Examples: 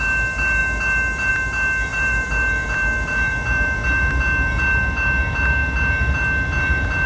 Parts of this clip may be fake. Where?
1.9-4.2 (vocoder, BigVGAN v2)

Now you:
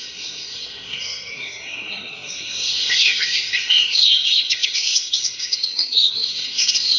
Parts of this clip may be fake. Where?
0.0-7.0 (codec, SNAC)

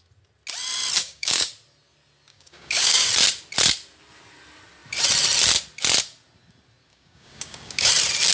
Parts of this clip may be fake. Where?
1.0-1.5 (codec, DAC); 2.3-3.1; 6.9-7.9

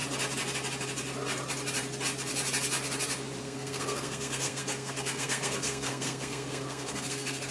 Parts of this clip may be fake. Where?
3.4-7.5 (codec, SNAC)

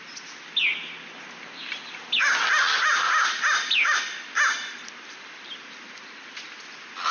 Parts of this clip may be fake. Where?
2.8-4.0 (vocoder, BigVGAN v2)

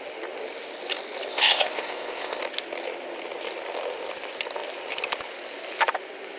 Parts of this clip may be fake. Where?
1.3-2.4 (codec, ZipCodec)

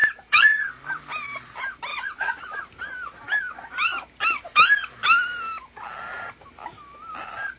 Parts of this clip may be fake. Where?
0.0-0.6 (vocoder, Vocos); 1.9-2.6